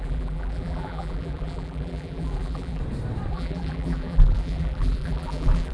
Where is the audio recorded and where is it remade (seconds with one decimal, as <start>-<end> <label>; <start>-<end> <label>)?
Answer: 0.0-2.8 remade; 2.8-3.3 recorded; 3.3-5.7 remade